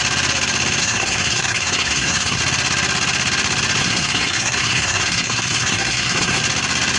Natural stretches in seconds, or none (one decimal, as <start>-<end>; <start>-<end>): 0.0-0.8; 2.4-3.8; 6.4-7.0